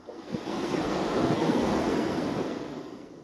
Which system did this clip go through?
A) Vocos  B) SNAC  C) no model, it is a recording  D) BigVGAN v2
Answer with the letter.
B